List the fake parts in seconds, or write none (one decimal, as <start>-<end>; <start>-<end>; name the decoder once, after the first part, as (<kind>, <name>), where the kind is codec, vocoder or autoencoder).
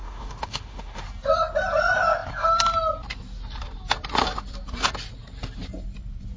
0.0-1.0 (autoencoder, DAC-VAE)